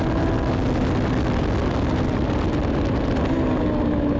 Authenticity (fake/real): real